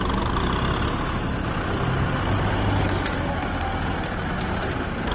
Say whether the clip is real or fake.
real